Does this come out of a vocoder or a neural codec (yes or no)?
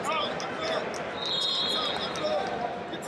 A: no